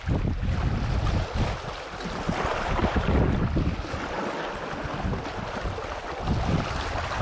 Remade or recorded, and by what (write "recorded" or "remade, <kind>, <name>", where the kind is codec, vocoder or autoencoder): recorded